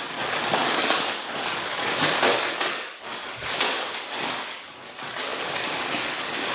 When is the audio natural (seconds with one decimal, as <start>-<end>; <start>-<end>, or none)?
none